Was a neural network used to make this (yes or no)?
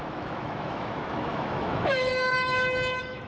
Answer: yes